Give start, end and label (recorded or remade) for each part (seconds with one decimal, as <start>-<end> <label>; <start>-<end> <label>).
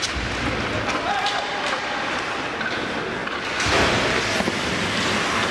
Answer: 0.0-5.5 recorded